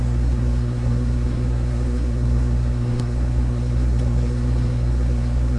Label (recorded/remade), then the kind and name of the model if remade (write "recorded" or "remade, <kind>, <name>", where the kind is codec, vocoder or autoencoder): remade, codec, SNAC